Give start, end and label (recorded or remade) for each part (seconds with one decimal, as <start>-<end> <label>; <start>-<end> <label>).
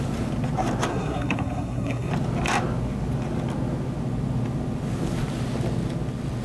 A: 0.0-0.9 recorded; 0.9-2.1 remade; 2.1-6.4 recorded